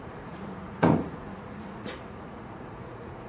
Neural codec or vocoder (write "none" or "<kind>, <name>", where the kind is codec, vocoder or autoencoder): vocoder, Vocos